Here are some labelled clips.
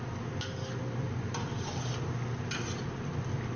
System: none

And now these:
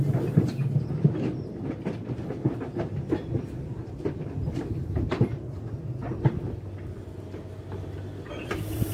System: none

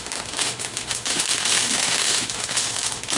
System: autoencoder, DAC-VAE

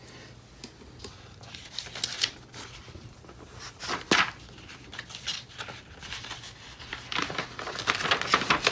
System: none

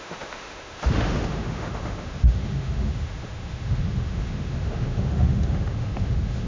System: autoencoder, DAC-VAE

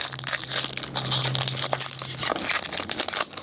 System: none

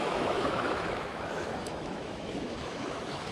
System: autoencoder, DAC-VAE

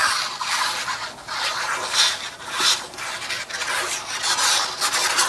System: none